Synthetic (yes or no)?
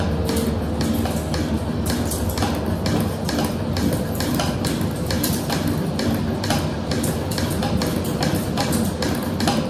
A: no